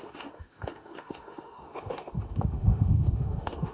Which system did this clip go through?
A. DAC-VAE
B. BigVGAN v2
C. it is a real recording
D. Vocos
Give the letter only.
A